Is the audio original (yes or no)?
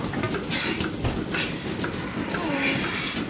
yes